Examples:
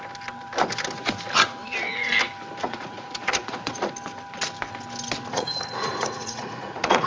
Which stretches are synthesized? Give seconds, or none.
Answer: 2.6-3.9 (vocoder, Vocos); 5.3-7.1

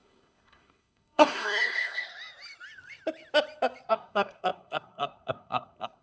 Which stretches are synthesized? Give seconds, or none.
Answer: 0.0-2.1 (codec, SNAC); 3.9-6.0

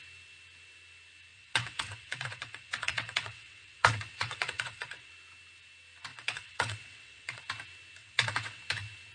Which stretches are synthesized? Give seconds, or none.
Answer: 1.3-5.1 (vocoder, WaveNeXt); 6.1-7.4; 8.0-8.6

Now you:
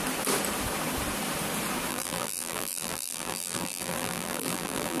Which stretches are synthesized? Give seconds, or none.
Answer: 1.9-5.0 (vocoder, BigVGAN v2)

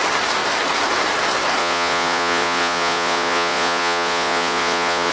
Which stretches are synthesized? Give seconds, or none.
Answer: 1.6-5.1 (vocoder, Vocos)

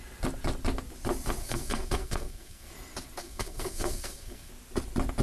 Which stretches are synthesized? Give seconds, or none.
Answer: 1.4-2.7 (codec, SNAC); 3.2-4.5